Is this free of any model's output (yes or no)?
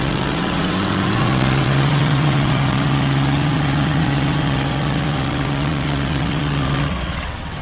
no